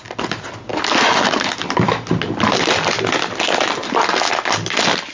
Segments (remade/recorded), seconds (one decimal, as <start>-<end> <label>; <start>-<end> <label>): 0.0-5.1 recorded